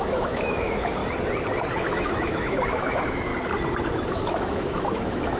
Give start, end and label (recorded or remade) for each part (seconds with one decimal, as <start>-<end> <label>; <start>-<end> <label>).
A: 0.0-1.0 remade; 1.0-1.7 recorded; 1.7-3.3 remade; 3.3-4.1 recorded; 4.1-5.4 remade